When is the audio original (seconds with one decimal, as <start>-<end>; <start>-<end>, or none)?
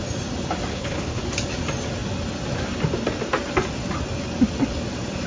0.0-0.7; 1.2-5.3